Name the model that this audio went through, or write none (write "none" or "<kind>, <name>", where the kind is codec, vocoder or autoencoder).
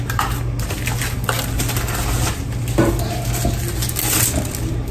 none